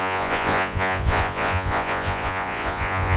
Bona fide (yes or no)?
no